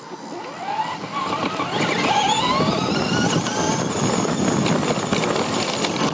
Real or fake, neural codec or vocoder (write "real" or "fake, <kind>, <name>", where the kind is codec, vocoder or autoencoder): real